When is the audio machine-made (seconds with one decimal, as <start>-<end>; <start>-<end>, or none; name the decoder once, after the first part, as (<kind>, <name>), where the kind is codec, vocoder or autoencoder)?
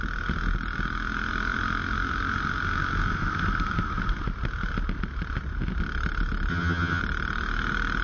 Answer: 6.5-7.0 (vocoder, HiFi-GAN)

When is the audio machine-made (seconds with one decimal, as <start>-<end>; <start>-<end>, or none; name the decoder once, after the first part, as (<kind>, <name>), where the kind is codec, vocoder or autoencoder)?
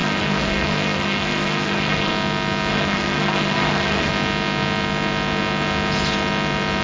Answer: 0.0-2.1 (codec, SNAC); 2.7-4.1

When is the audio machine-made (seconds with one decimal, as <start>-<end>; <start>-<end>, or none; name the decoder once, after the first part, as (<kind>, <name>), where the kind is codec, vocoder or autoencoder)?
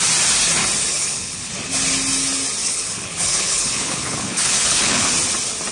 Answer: 0.9-1.5 (codec, HILCodec); 2.6-5.1